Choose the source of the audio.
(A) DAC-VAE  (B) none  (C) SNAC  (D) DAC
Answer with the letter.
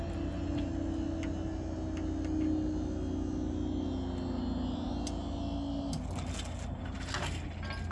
B